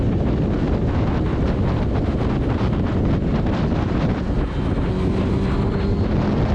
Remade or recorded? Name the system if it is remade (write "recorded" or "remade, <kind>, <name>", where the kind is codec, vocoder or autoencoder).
recorded